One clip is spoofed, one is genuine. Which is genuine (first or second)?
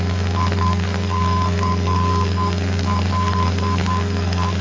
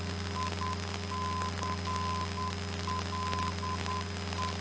second